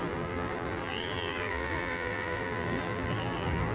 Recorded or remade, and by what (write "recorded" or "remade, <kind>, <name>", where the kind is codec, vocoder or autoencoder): remade, vocoder, BigVGAN v2